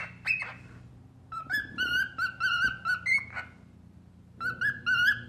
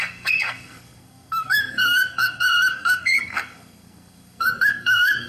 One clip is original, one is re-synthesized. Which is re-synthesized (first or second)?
second